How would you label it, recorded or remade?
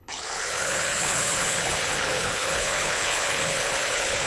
remade